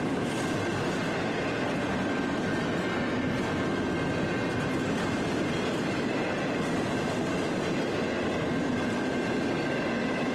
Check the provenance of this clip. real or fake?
real